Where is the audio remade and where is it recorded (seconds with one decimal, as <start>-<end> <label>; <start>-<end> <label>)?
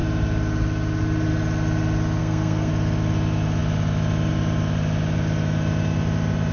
0.0-2.2 recorded; 2.2-2.7 remade; 2.7-6.5 recorded